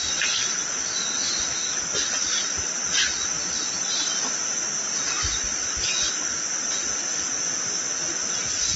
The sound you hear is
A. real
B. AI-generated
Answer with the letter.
A